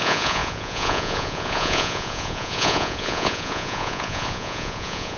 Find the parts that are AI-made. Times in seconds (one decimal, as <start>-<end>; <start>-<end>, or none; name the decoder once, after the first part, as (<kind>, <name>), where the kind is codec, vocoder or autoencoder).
0.0-5.2 (vocoder, Vocos)